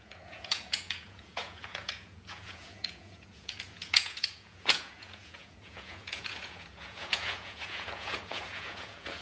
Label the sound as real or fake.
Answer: fake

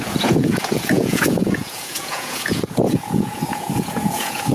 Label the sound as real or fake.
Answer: fake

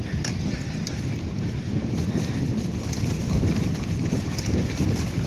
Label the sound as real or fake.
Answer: real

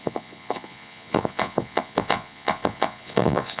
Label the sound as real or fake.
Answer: fake